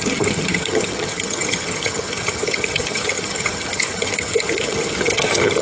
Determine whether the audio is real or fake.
fake